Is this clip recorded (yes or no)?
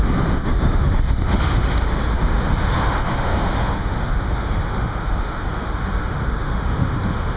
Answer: no